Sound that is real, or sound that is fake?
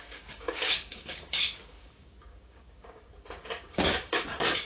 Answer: fake